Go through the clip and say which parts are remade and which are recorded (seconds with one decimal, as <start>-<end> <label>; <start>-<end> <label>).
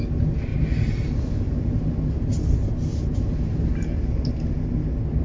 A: 0.0-0.5 recorded; 0.5-1.8 remade; 1.8-2.9 recorded; 2.9-3.8 remade; 3.8-5.2 recorded